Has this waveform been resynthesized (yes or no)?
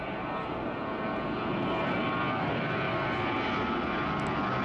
no